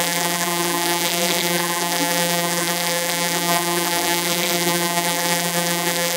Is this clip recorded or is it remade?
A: remade